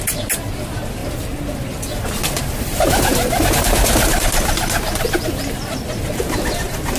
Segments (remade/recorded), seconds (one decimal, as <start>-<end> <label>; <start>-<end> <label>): 0.0-7.0 recorded

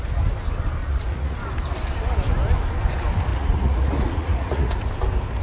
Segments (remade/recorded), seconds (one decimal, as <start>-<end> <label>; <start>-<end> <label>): 0.0-0.8 recorded; 0.8-1.4 remade; 1.4-3.3 recorded; 3.3-4.9 remade; 4.9-5.4 recorded